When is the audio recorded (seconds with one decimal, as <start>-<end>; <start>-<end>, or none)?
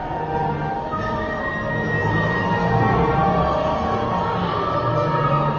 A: 1.5-2.0